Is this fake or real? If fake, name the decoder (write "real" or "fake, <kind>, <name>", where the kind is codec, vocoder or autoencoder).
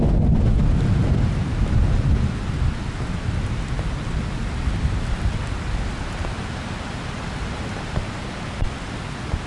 real